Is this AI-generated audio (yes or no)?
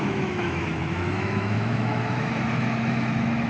yes